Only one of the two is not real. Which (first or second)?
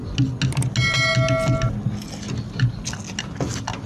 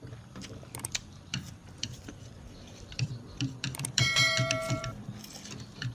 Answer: second